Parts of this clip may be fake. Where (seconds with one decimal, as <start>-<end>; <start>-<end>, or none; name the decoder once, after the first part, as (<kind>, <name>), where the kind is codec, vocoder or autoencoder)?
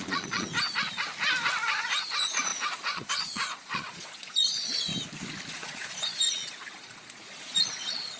0.0-0.5 (vocoder, Vocos); 2.1-4.9; 5.5-8.2